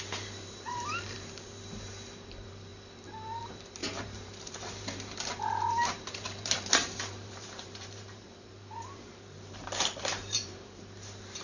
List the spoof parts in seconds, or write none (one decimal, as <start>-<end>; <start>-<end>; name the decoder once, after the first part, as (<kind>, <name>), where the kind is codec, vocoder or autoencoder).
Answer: 0.0-2.7 (vocoder, BigVGAN v2); 3.4-11.4